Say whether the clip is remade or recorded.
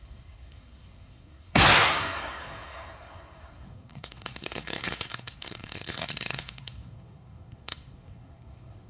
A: remade